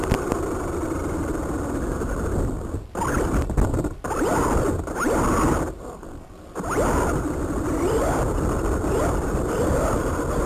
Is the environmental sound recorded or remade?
recorded